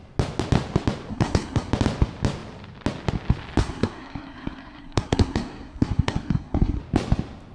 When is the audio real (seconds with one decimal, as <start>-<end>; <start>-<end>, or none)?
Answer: 0.0-1.1; 1.7-3.6; 6.8-7.5